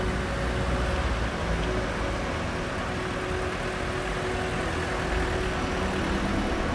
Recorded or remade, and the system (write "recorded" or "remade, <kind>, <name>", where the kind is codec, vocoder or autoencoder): recorded